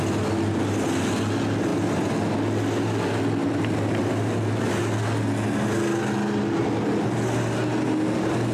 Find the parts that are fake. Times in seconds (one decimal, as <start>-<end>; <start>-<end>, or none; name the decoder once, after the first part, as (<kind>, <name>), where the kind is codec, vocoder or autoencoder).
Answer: none